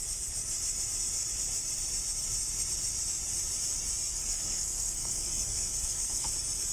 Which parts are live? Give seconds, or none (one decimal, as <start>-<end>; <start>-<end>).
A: 0.0-4.2; 6.3-6.7